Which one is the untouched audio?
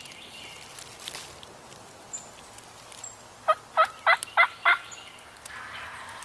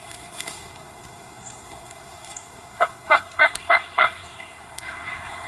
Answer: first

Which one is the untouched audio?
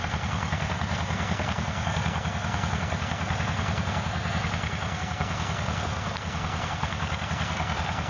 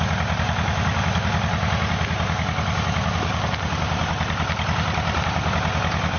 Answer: second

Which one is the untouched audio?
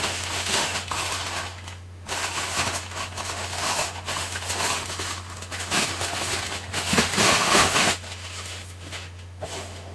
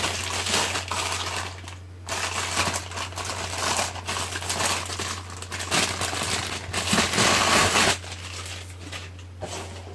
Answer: second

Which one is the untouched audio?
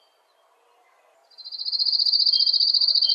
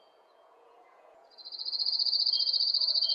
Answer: first